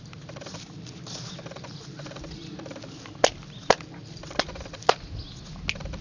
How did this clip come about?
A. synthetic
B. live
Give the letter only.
B